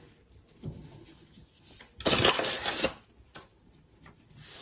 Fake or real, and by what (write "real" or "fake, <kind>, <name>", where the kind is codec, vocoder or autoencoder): real